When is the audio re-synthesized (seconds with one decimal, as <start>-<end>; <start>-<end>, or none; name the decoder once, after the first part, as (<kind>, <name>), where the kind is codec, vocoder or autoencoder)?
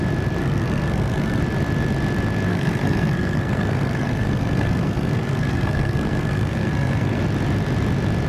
0.4-1.4 (codec, SNAC); 2.5-7.2